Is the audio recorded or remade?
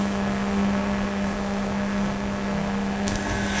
remade